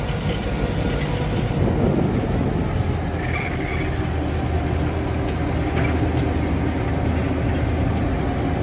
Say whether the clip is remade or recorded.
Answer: recorded